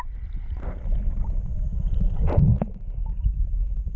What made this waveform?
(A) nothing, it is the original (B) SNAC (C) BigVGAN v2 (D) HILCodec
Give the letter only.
A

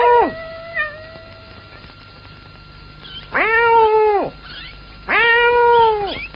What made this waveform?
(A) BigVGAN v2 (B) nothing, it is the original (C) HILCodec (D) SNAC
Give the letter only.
B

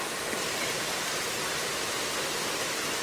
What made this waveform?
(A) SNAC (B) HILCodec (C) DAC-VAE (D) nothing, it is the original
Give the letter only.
D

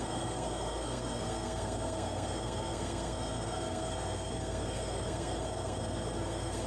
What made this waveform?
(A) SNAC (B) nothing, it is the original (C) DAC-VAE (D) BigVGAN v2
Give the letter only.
A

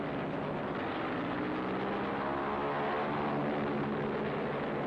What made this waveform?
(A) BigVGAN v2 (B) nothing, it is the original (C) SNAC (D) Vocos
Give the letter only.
B